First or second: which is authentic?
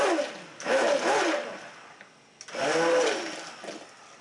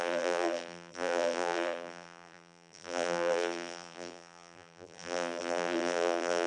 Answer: first